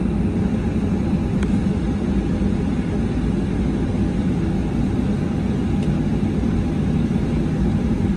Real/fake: real